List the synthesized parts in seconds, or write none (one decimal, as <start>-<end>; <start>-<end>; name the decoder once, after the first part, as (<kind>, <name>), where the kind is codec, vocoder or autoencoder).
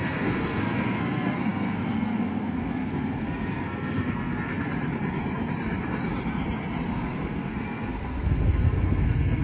0.0-4.5 (codec, SNAC); 6.9-9.4